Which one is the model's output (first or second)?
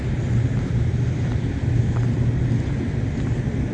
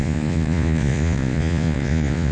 second